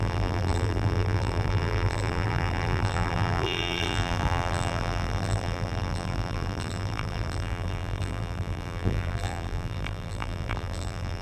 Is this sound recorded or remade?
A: remade